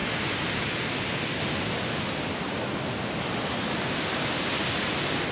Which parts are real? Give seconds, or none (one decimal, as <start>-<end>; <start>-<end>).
0.0-5.3